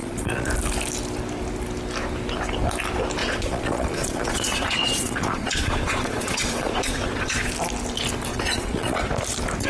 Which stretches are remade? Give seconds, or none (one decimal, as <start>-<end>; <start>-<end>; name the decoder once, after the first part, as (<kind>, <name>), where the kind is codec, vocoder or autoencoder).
0.0-0.5 (vocoder, Vocos); 3.2-7.5; 8.3-9.1